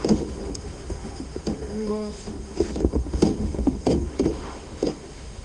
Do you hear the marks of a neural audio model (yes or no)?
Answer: yes